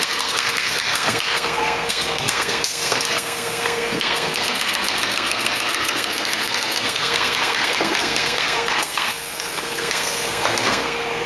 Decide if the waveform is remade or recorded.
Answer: remade